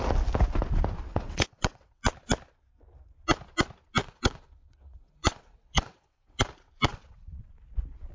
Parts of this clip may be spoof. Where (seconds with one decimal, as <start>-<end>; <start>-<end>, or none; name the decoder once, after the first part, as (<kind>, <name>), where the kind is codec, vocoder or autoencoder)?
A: 1.1-2.0 (vocoder, WaveNeXt); 4.0-6.4; 6.9-7.5